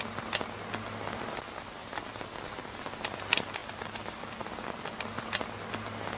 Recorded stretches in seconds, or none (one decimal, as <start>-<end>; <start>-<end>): 0.0-6.2